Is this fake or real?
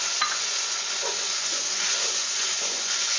fake